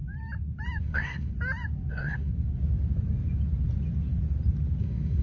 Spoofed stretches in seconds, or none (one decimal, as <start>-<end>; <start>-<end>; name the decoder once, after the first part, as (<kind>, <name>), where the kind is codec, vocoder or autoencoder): 0.8-1.3 (codec, SNAC); 1.9-2.3; 4.8-5.2